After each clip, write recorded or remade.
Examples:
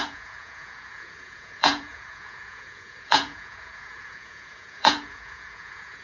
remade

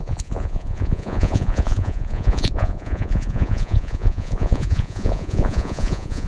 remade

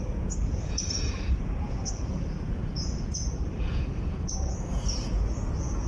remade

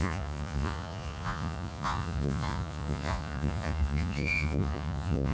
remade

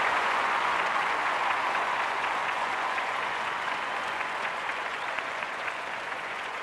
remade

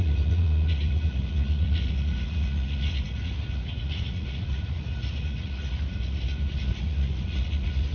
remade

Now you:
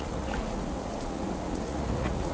remade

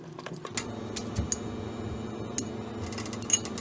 recorded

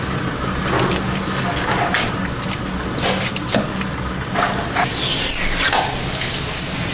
recorded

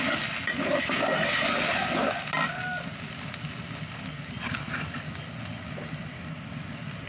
recorded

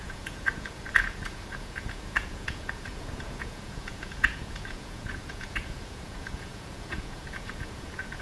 remade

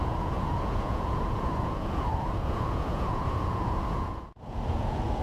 remade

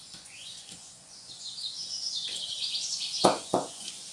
remade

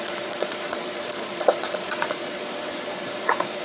remade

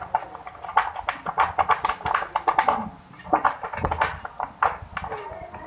recorded